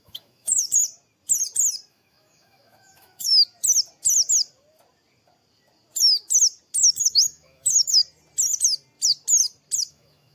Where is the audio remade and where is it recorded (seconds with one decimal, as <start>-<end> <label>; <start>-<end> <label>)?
0.0-0.8 remade; 0.8-1.9 recorded; 1.9-3.3 remade; 3.3-6.8 recorded; 6.8-8.0 remade; 8.0-9.9 recorded; 9.9-10.3 remade